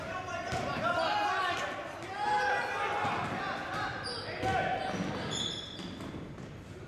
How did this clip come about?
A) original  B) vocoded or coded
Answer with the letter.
A